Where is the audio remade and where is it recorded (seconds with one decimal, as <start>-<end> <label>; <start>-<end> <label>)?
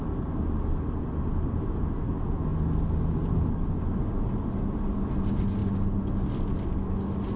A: 0.0-7.4 recorded